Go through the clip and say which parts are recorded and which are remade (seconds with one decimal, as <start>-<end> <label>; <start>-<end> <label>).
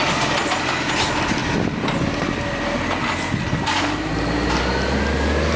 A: 0.0-5.6 recorded